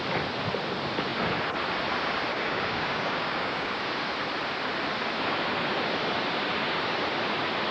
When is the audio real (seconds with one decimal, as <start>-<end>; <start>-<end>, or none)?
0.0-2.3; 3.8-7.7